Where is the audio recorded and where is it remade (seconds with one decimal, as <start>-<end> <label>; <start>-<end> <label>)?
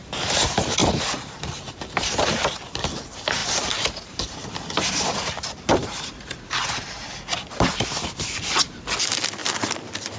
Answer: 0.0-0.8 recorded; 0.8-1.9 remade; 1.9-3.4 recorded; 3.4-6.6 remade; 6.6-9.4 recorded; 9.4-10.2 remade